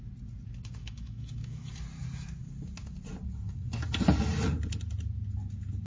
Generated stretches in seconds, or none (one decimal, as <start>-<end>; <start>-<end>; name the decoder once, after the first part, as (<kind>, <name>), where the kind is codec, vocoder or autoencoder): 0.8-1.7 (autoencoder, DAC-VAE)